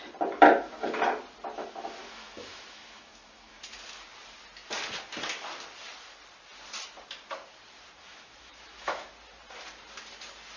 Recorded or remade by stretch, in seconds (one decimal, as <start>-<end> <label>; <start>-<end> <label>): 0.0-2.0 recorded; 2.0-3.6 remade; 3.6-8.1 recorded; 8.1-9.1 remade; 9.1-10.6 recorded